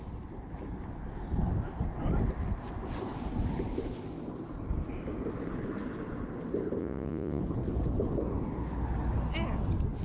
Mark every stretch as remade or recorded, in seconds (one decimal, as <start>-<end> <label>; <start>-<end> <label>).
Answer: 0.0-6.8 recorded; 6.8-7.4 remade; 7.4-10.0 recorded